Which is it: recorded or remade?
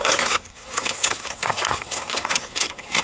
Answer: remade